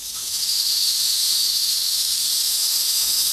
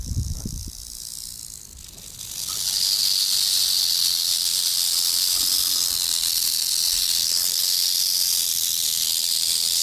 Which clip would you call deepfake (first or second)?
first